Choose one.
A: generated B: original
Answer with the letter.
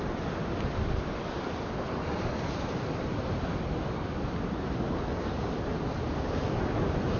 B